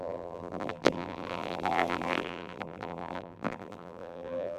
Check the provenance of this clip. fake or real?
fake